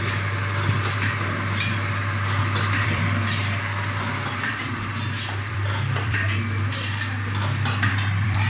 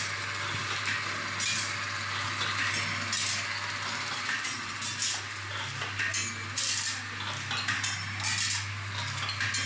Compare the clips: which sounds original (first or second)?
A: second